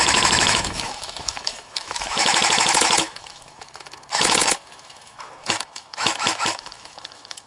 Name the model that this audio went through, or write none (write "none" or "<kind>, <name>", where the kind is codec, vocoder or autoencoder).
autoencoder, DAC-VAE